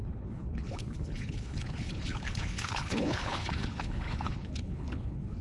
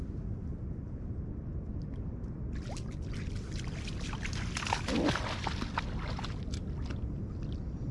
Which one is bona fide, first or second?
second